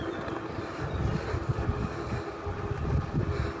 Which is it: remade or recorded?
recorded